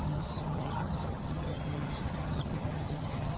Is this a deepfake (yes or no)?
yes